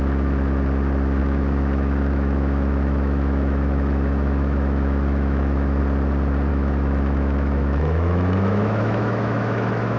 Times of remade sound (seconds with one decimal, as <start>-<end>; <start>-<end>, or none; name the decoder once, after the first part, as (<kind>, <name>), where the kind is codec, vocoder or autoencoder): 1.2-5.8 (autoencoder, DAC-VAE); 6.5-10.0